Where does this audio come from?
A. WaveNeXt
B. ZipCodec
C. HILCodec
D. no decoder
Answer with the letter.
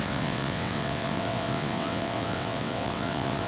A